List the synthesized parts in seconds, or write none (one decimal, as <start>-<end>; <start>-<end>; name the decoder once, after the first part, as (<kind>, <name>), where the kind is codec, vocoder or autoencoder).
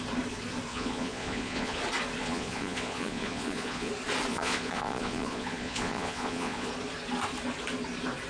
0.7-1.8 (vocoder, Vocos); 2.2-3.9; 4.3-6.7